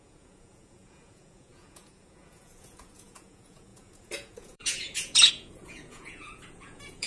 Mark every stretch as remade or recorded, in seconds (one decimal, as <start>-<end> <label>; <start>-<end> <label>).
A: 0.0-7.1 remade